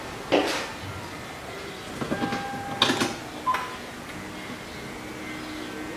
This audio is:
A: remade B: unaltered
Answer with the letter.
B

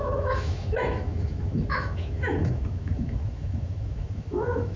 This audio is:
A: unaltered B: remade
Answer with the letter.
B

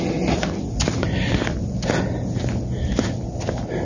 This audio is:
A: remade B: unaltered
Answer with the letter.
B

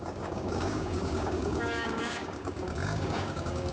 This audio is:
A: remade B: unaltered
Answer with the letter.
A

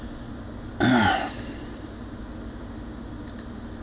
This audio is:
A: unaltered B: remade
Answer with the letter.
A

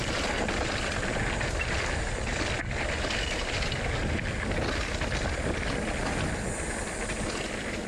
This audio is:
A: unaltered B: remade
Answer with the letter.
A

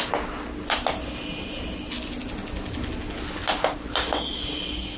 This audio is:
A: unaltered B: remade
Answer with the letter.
A